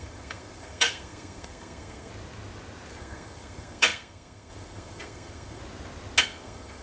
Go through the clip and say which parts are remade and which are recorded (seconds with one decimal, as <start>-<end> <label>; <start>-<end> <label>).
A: 0.0-2.1 remade; 2.1-2.9 recorded; 2.9-5.6 remade; 5.6-6.2 recorded; 6.2-6.8 remade